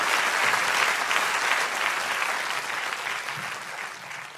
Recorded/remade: recorded